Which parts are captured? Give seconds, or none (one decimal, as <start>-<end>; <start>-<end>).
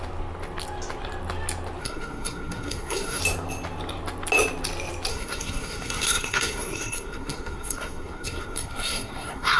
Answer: 0.0-1.8; 3.2-5.1